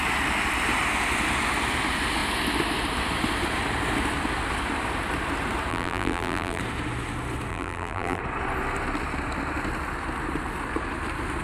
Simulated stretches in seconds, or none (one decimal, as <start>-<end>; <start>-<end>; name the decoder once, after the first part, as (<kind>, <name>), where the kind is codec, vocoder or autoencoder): 5.7-6.6 (vocoder, BigVGAN v2); 7.5-8.2